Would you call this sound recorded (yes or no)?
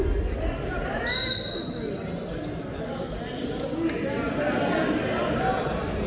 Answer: yes